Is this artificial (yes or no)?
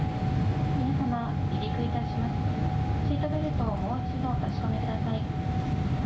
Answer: no